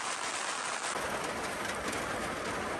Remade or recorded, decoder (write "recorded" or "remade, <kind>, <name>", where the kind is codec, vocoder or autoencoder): recorded